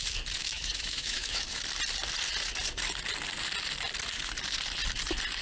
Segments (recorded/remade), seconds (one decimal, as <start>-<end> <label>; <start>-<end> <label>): 0.0-0.4 recorded; 0.4-1.6 remade; 1.6-5.4 recorded